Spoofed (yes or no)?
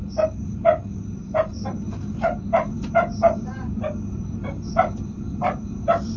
no